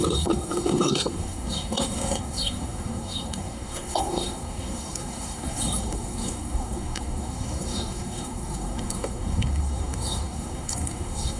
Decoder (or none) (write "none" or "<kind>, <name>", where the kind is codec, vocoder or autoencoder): codec, SNAC